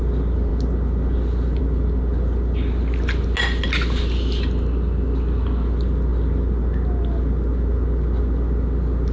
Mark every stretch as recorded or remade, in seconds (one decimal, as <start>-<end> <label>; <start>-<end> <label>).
0.0-9.1 recorded